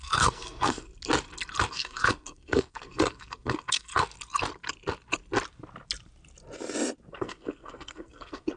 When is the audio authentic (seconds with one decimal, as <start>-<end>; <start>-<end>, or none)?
0.9-1.7; 3.9-7.1